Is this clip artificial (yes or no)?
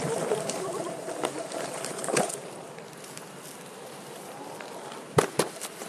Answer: no